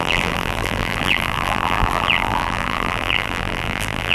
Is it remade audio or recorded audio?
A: remade